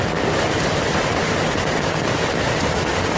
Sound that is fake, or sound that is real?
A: real